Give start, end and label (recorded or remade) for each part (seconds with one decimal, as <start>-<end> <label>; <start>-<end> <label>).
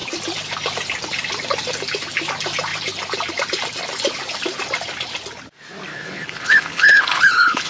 0.0-5.9 recorded; 5.9-7.7 remade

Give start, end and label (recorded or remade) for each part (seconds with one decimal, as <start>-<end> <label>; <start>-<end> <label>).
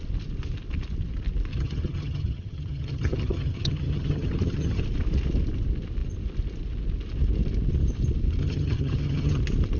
0.0-1.5 recorded; 1.5-4.8 remade; 4.8-8.4 recorded; 8.4-9.4 remade; 9.4-9.8 recorded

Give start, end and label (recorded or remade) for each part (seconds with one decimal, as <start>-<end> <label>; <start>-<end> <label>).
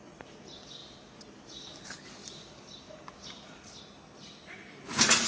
0.0-5.3 recorded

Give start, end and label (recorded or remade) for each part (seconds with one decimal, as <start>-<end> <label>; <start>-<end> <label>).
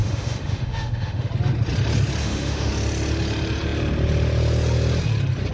0.0-1.3 remade; 1.3-2.2 recorded; 2.2-2.7 remade; 2.7-5.5 recorded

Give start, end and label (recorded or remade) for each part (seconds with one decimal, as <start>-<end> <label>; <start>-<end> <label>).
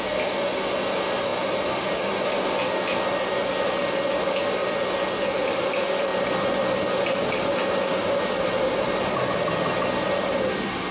0.0-10.9 recorded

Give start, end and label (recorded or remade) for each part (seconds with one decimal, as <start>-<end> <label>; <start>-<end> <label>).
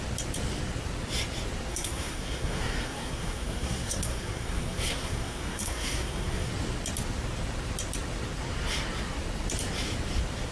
0.0-1.7 recorded; 1.7-6.5 remade; 6.5-10.5 recorded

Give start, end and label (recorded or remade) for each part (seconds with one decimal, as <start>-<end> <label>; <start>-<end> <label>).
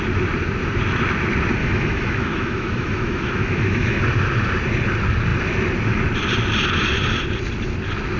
0.0-1.6 recorded; 1.6-4.0 remade; 4.0-8.2 recorded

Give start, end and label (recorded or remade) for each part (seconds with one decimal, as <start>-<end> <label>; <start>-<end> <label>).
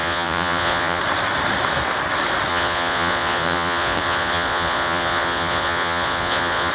0.0-1.0 remade; 1.0-2.5 recorded; 2.5-6.7 remade